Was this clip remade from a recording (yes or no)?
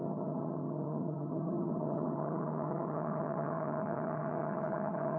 yes